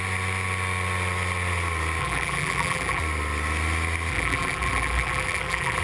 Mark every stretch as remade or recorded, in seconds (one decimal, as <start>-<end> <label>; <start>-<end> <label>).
0.0-2.0 recorded; 2.0-3.0 remade; 3.0-4.1 recorded; 4.1-5.8 remade

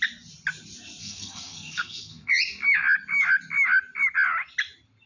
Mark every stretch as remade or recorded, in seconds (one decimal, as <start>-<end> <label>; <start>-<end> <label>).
0.0-1.0 recorded; 1.0-2.3 remade; 2.3-5.1 recorded